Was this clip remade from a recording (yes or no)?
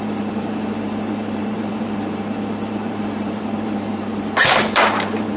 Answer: yes